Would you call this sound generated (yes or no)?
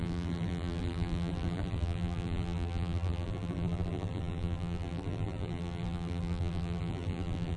yes